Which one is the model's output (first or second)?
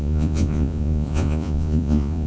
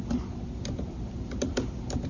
first